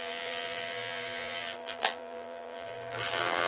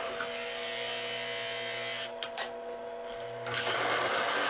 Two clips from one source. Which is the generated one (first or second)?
first